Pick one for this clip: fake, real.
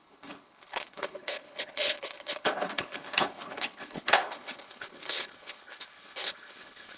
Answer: fake